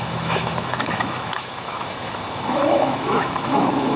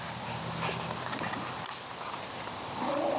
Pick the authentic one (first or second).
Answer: second